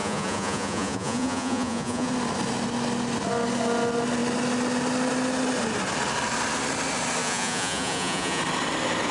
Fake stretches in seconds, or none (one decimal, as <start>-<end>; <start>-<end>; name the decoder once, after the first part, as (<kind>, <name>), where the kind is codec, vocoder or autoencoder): 0.0-2.1 (vocoder, Vocos); 7.2-8.4